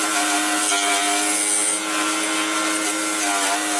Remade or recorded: recorded